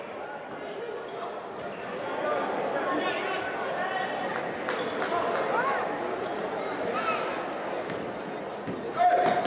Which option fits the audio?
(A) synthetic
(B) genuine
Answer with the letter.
B